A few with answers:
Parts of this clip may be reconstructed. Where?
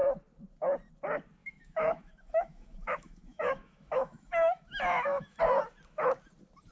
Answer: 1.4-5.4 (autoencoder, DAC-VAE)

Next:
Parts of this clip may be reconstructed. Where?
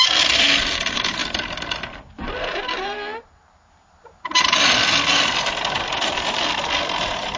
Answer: none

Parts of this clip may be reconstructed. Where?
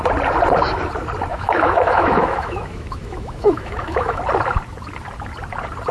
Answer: 1.3-4.2 (autoencoder, DAC-VAE)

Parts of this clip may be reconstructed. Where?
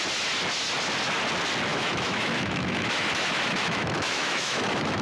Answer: 1.7-5.0 (autoencoder, DAC-VAE)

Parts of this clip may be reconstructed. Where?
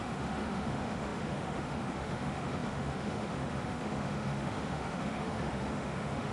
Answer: 0.0-6.3 (autoencoder, DAC-VAE)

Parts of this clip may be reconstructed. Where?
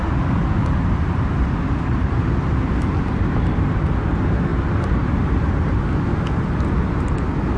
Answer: none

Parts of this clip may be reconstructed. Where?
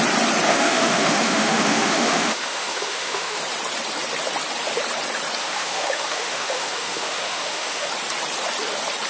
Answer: 0.5-3.4 (autoencoder, DAC-VAE); 5.4-7.9